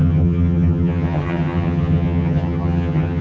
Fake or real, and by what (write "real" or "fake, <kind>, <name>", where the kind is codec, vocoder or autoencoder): fake, vocoder, HiFi-GAN